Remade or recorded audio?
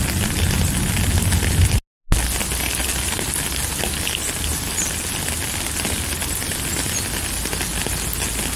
recorded